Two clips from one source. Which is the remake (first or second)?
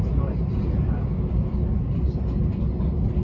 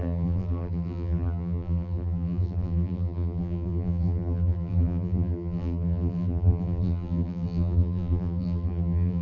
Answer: second